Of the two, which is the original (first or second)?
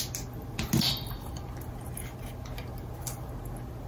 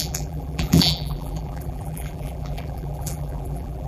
first